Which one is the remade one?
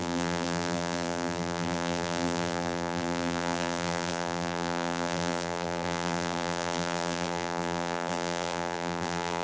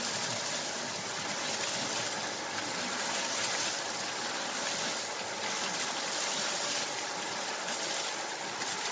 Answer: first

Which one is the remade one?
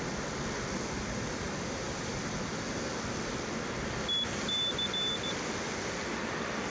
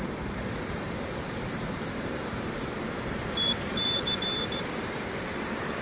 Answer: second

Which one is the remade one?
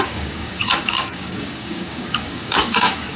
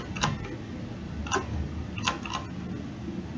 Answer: first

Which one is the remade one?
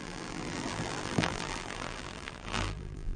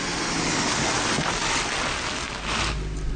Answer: first